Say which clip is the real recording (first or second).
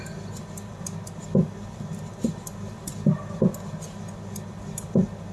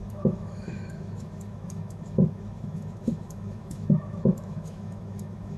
first